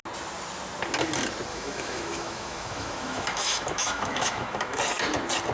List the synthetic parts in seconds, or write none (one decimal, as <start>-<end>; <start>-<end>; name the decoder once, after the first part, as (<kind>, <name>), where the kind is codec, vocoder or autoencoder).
1.5-4.8 (autoencoder, DAC-VAE)